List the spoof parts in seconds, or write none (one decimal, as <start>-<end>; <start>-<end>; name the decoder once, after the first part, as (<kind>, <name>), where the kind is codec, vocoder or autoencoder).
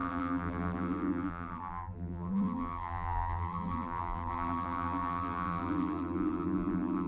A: 0.0-7.1 (vocoder, BigVGAN v2)